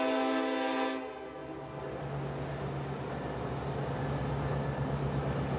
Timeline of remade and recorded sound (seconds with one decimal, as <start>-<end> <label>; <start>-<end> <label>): 0.0-5.6 recorded